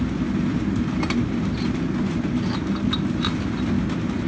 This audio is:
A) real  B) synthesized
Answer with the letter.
A